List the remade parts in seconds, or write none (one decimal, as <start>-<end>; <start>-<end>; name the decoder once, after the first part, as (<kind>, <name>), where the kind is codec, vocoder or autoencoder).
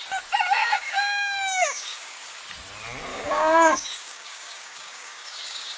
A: 0.6-2.4 (codec, DAC); 3.1-5.8